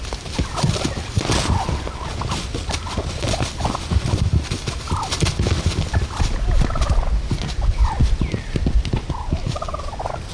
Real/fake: real